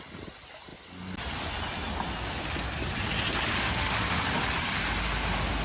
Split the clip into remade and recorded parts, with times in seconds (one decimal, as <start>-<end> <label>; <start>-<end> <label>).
0.0-3.6 recorded; 3.6-4.2 remade; 4.2-5.6 recorded